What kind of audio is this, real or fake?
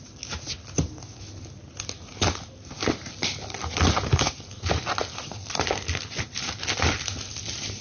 real